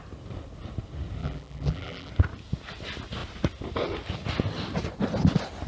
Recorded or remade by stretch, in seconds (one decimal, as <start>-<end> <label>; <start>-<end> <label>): 0.0-1.2 recorded; 1.2-2.1 remade; 2.1-5.7 recorded